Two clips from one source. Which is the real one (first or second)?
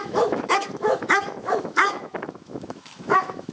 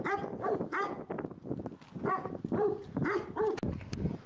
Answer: second